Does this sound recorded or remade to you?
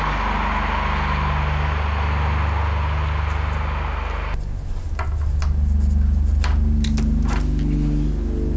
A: recorded